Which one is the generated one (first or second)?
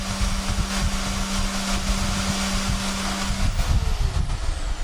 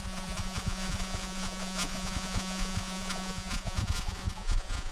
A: second